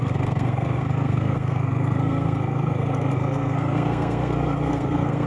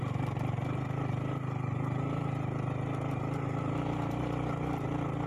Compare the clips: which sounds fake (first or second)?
first